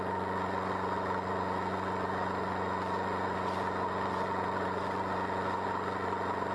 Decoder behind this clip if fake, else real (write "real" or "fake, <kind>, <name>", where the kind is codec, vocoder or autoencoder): fake, vocoder, Vocos